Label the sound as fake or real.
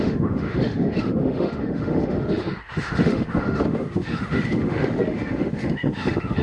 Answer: fake